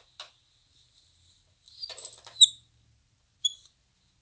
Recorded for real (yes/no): yes